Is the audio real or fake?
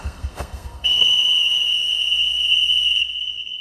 fake